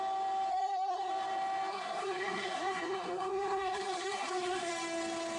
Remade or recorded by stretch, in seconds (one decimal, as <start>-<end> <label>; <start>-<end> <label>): 0.0-0.5 recorded; 0.5-1.1 remade; 1.1-1.7 recorded; 1.7-4.7 remade; 4.7-5.4 recorded